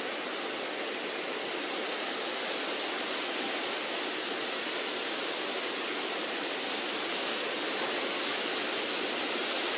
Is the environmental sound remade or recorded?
recorded